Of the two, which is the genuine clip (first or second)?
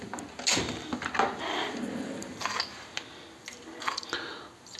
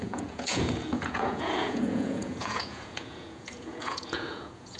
first